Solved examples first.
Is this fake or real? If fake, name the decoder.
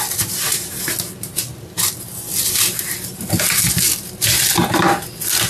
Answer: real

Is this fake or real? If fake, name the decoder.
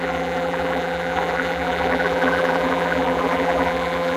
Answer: fake, vocoder, BigVGAN v2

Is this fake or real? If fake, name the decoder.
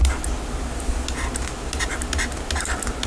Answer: real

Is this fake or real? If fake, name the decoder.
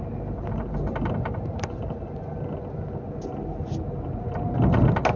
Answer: real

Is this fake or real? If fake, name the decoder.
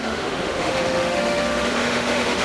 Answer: fake, autoencoder, DAC-VAE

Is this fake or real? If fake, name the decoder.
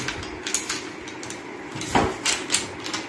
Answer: real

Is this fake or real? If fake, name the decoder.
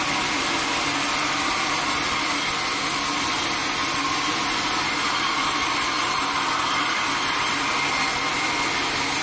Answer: real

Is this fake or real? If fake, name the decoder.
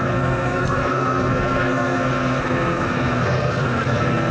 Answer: fake, codec, SNAC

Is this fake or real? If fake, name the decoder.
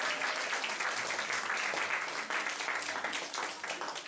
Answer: real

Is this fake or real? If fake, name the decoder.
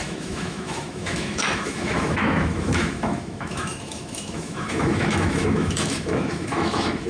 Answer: fake, autoencoder, DAC-VAE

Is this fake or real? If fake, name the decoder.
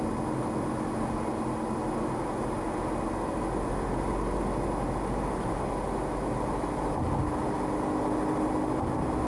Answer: real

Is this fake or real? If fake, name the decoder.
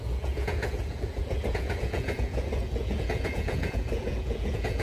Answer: fake, vocoder, Vocos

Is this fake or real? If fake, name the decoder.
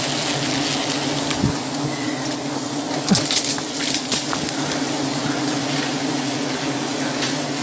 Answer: real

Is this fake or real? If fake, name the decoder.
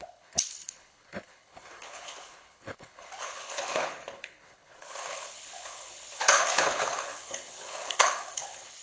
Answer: fake, codec, HILCodec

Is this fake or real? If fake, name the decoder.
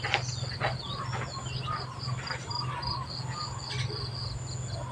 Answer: real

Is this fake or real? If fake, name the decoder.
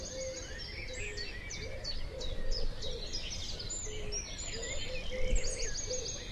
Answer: real